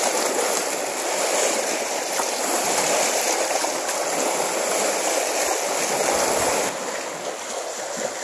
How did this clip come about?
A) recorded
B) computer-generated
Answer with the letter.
A